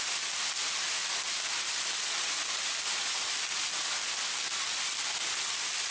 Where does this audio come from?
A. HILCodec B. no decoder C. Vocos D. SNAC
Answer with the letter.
B